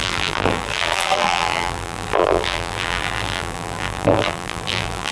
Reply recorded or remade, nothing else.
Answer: remade